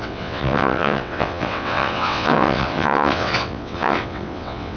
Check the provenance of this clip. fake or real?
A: fake